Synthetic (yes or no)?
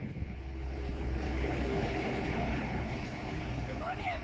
yes